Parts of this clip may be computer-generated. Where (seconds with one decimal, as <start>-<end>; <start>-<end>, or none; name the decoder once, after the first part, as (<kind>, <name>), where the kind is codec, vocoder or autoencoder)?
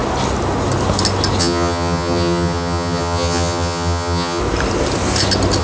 1.4-4.4 (vocoder, HiFi-GAN)